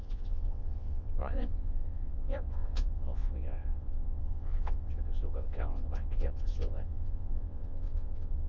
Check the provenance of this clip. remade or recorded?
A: remade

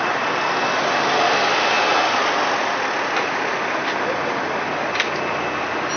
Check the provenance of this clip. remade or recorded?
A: recorded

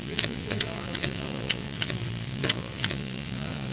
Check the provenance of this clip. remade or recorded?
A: remade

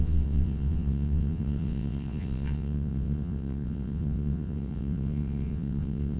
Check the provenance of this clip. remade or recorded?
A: remade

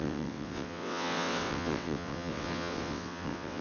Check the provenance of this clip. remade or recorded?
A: remade